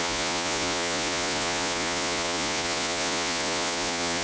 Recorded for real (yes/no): no